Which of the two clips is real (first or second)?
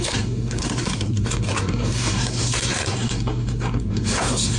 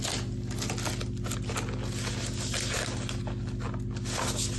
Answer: second